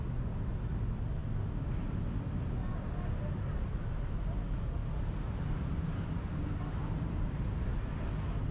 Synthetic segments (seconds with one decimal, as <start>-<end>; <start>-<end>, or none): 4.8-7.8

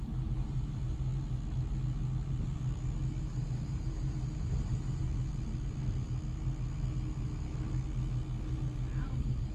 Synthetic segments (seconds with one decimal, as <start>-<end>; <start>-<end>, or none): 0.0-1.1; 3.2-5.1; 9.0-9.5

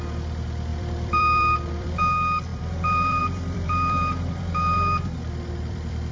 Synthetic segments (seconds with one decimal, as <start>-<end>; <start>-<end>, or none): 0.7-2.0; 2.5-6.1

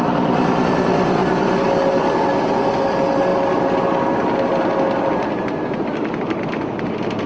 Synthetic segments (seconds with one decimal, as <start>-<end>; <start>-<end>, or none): 1.2-2.3

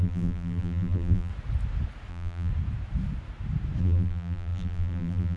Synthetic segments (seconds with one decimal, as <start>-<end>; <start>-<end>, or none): 0.0-1.3; 2.1-2.5; 3.8-5.4

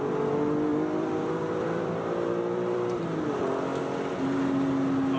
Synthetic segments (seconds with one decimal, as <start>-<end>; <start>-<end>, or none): 0.7-3.8

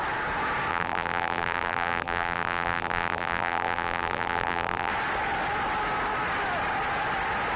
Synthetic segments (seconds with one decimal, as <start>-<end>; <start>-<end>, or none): 0.7-4.9